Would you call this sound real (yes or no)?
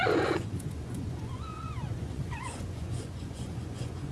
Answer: no